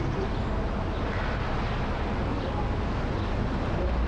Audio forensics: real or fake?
real